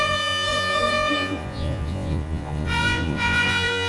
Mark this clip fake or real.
fake